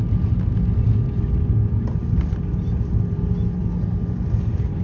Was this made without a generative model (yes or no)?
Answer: yes